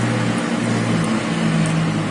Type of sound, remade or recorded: recorded